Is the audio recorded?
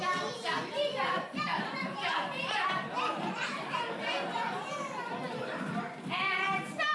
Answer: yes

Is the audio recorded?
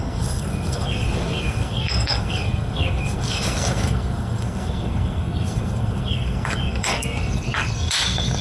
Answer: no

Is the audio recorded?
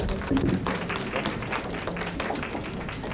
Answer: yes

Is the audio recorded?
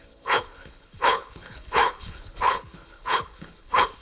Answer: no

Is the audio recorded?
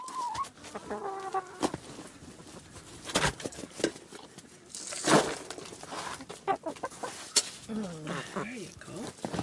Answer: yes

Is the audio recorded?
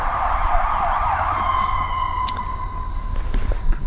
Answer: no